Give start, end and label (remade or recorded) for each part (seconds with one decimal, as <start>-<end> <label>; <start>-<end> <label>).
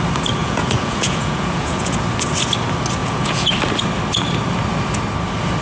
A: 0.0-0.4 recorded; 0.4-2.0 remade; 2.0-3.0 recorded; 3.0-3.5 remade; 3.5-5.6 recorded